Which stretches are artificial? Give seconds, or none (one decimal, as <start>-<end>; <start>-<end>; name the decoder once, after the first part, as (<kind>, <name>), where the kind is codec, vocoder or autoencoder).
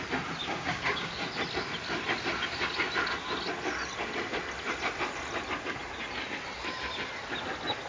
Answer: 0.4-1.1 (codec, DAC)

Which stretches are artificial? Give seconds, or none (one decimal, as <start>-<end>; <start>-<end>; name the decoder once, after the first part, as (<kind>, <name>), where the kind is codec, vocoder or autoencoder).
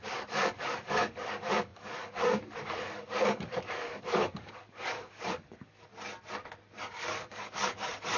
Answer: 0.0-5.9 (codec, DAC); 6.8-8.2